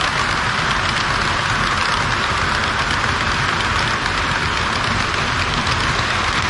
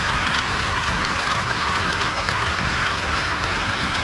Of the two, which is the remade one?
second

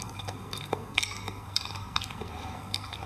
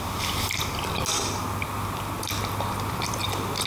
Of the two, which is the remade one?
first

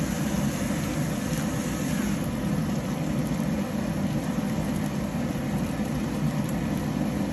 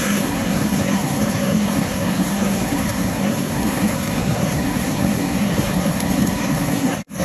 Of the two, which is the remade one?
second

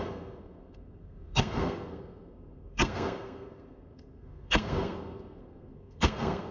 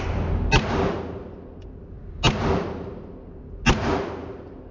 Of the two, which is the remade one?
first